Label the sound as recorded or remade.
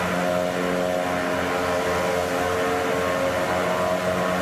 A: recorded